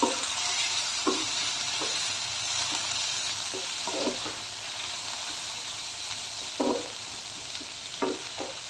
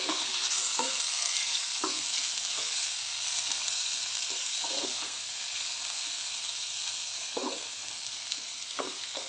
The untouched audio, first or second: first